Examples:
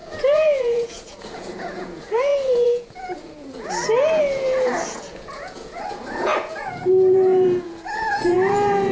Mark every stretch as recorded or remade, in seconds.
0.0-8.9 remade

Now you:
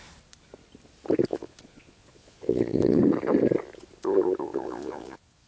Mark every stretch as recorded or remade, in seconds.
0.0-1.3 recorded; 1.3-3.0 remade; 3.0-4.5 recorded; 4.5-5.5 remade